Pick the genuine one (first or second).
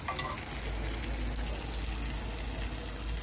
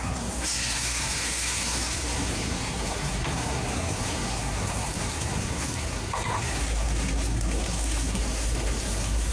first